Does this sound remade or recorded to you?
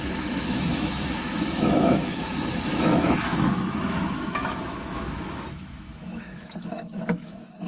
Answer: remade